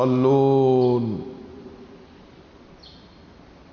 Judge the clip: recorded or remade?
recorded